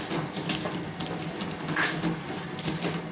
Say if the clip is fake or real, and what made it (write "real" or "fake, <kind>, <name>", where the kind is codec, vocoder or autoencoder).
real